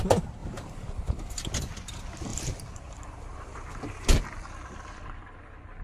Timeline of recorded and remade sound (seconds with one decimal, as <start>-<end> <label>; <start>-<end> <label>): 0.0-0.4 recorded; 0.4-1.1 remade; 1.1-2.3 recorded; 2.3-4.2 remade; 4.2-5.8 recorded